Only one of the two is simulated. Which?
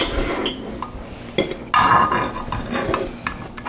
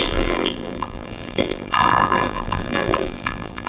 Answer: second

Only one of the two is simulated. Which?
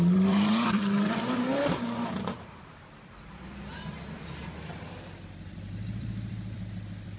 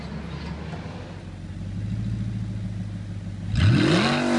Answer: first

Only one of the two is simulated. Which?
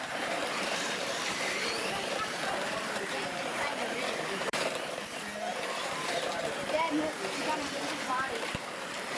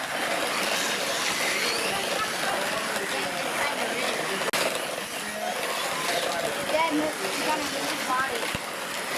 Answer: first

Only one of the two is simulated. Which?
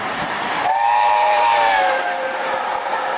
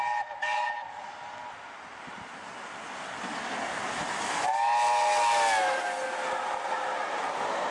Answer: first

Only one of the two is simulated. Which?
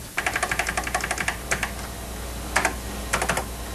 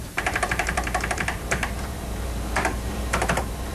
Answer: second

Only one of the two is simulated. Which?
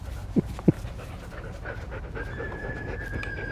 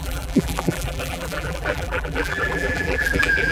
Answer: second